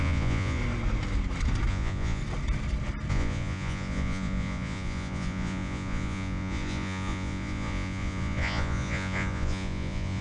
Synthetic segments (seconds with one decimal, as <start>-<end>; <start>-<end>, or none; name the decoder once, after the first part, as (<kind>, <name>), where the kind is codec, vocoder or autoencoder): 0.0-0.6 (vocoder, Vocos); 1.7-2.2; 3.1-10.2

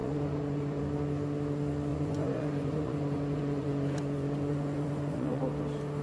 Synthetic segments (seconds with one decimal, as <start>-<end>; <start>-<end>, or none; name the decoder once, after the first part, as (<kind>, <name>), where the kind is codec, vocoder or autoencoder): 0.0-0.8 (vocoder, Vocos); 1.9-5.4

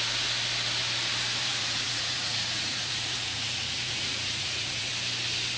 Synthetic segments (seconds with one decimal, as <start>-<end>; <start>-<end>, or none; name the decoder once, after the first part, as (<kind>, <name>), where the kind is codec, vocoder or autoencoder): 1.5-4.9 (vocoder, Vocos)

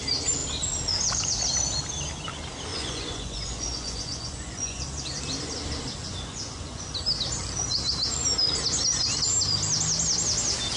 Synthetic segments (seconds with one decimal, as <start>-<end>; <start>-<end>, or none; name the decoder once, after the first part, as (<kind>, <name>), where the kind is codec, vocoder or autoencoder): 2.7-4.8 (vocoder, Vocos); 6.0-6.9

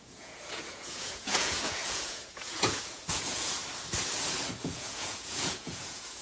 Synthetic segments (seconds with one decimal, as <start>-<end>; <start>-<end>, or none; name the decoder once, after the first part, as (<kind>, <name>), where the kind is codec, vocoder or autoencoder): 0.0-3.6 (vocoder, Vocos); 4.5-6.2

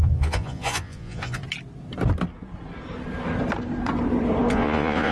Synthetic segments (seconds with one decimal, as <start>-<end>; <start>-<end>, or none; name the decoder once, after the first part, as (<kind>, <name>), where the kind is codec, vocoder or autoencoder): 0.0-1.4 (vocoder, Vocos); 4.5-5.1

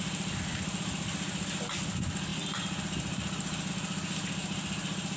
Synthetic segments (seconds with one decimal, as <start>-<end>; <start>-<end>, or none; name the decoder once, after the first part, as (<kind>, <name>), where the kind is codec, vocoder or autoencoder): none

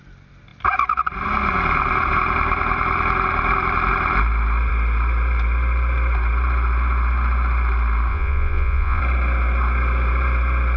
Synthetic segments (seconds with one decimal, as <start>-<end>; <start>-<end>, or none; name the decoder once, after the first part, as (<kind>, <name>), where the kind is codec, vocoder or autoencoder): 8.1-9.0 (vocoder, Vocos)